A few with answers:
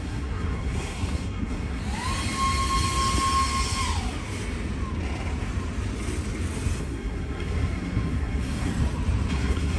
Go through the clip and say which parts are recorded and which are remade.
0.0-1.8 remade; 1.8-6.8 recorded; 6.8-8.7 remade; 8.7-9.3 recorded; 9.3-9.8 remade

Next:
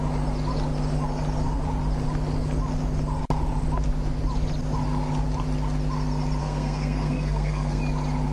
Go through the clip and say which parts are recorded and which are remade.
0.0-6.4 recorded; 6.4-7.8 remade; 7.8-8.3 recorded

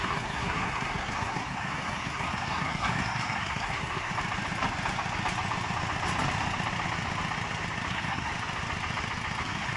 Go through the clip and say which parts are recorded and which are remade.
0.0-4.1 remade; 4.1-7.9 recorded; 7.9-8.3 remade; 8.3-9.4 recorded; 9.4-9.8 remade

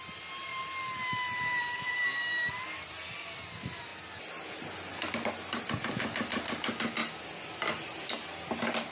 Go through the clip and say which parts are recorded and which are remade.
0.0-8.9 recorded

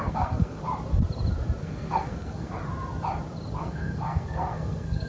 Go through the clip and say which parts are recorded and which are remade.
0.0-0.6 remade; 0.6-1.6 recorded; 1.6-2.6 remade; 2.6-3.6 recorded; 3.6-5.1 remade

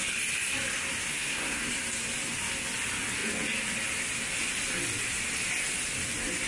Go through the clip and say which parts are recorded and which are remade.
0.0-1.1 recorded; 1.1-1.7 remade; 1.7-6.5 recorded

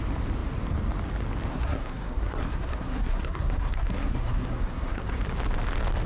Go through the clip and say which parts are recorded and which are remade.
0.0-1.5 recorded; 1.5-5.2 remade; 5.2-6.1 recorded

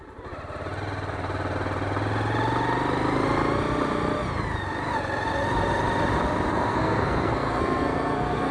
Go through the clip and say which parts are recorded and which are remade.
0.0-6.5 recorded; 6.5-8.5 remade